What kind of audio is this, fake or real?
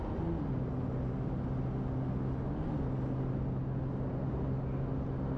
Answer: real